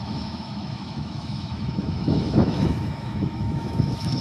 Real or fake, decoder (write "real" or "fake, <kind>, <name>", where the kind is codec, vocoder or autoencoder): fake, autoencoder, DAC-VAE